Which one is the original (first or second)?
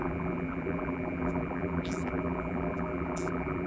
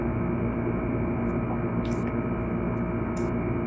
second